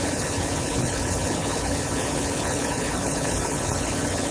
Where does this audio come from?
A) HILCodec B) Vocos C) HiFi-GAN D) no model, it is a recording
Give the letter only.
A